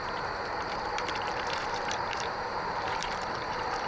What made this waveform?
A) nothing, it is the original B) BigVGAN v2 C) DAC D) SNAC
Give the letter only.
B